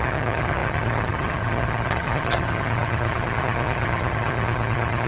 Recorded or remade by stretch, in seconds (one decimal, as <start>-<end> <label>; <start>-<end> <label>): 0.0-5.1 remade